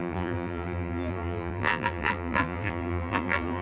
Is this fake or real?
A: fake